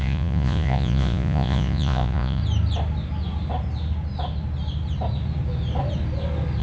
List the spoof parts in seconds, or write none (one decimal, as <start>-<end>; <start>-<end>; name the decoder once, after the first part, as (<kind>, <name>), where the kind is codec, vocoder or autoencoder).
0.0-2.4 (vocoder, Vocos)